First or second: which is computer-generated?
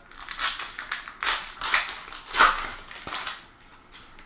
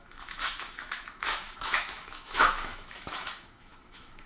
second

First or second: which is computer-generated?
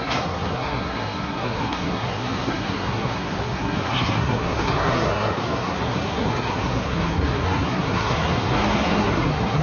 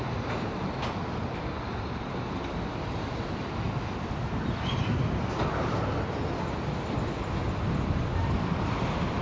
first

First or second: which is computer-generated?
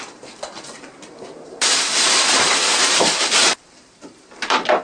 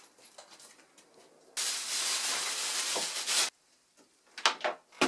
first